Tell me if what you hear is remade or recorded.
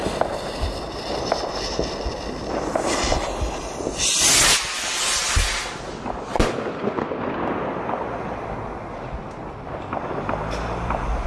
recorded